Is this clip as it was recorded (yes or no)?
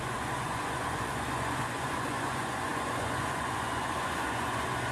no